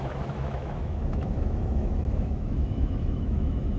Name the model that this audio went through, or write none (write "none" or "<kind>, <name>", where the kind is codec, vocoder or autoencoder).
autoencoder, DAC-VAE